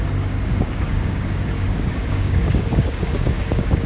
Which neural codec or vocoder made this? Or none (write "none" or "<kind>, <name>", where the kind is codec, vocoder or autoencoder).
codec, DAC